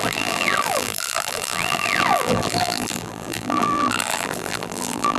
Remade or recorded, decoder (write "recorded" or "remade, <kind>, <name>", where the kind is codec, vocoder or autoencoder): remade, vocoder, BigVGAN v2